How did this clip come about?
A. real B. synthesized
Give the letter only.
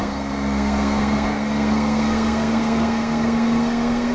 B